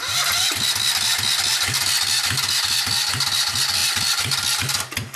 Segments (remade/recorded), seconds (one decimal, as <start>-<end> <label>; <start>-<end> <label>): 0.0-5.2 recorded